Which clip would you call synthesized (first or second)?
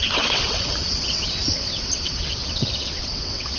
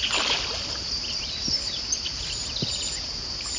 first